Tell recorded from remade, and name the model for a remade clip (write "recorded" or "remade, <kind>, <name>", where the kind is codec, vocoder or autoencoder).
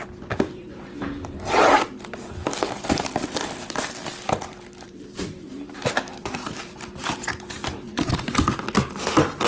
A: remade, vocoder, BigVGAN v2